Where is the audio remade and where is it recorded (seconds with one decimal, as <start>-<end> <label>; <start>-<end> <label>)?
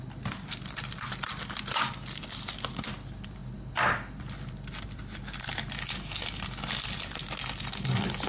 0.0-8.3 recorded